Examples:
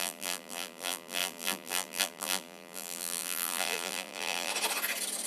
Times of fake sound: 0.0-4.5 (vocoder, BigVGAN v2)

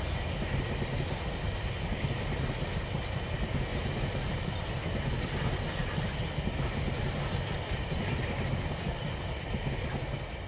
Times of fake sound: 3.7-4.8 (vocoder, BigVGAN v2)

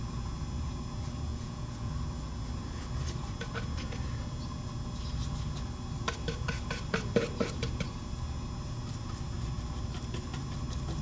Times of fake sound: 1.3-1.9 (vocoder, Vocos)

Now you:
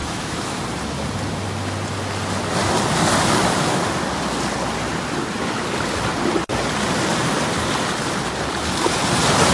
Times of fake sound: 0.0-0.6 (autoencoder, DAC-VAE)

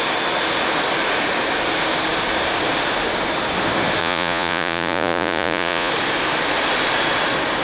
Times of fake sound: 4.0-5.9 (vocoder, Vocos)

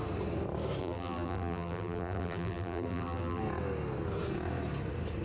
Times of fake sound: 0.8-3.4 (vocoder, BigVGAN v2)

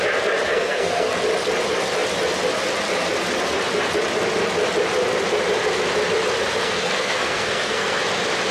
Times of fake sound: 0.5-1.1 (codec, SNAC); 6.6-8.0

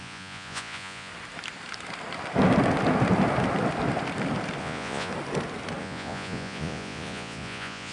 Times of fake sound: 0.0-1.1 (vocoder, Vocos); 4.6-5.1; 5.8-7.9